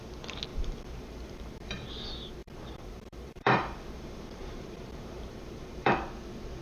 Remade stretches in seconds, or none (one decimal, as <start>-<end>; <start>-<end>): 0.5-1.9; 2.4-5.9